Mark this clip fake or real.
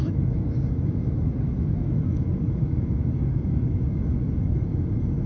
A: fake